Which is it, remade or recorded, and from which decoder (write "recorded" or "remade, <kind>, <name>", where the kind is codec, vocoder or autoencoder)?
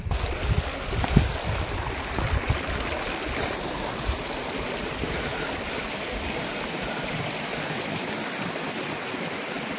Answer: recorded